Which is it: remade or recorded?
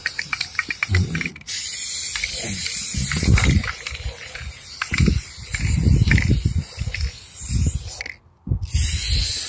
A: recorded